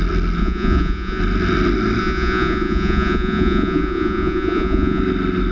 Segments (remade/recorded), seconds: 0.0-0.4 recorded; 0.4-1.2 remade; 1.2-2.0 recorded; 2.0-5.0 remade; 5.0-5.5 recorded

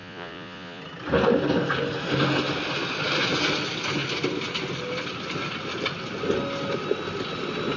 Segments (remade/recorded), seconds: 0.0-0.8 remade; 0.8-7.8 recorded

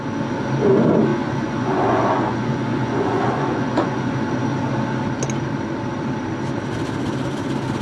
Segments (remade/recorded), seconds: 0.0-1.1 recorded; 1.1-4.1 remade; 4.1-7.8 recorded